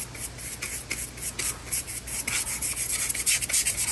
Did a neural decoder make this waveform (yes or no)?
no